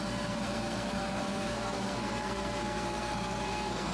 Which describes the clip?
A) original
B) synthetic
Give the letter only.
B